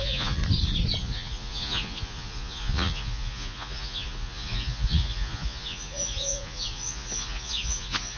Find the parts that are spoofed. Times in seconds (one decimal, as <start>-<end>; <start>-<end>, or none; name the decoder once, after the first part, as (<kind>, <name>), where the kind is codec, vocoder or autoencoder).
0.0-0.4 (vocoder, Vocos); 1.0-8.2